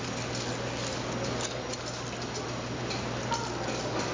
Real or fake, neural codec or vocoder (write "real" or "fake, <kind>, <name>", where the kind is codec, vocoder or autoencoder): real